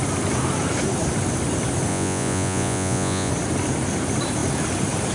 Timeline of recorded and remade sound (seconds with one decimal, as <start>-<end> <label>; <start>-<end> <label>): 0.0-1.9 recorded; 1.9-3.3 remade; 3.3-5.1 recorded